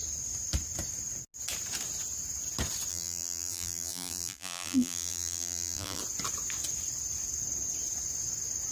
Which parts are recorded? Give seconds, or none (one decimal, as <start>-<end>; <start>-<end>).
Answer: 0.0-2.9; 6.0-8.7